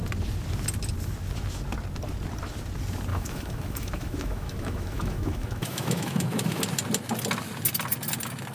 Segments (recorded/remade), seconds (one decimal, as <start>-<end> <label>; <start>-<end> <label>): 0.0-3.1 recorded; 3.1-6.6 remade; 6.6-8.5 recorded